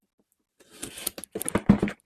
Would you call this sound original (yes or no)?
yes